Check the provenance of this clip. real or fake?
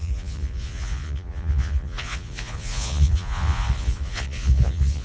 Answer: fake